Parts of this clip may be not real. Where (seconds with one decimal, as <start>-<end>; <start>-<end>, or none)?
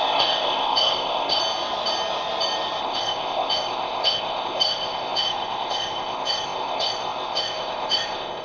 0.0-1.4; 2.8-8.4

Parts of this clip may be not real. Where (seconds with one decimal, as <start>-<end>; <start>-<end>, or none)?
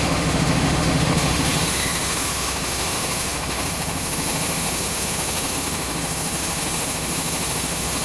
0.0-8.0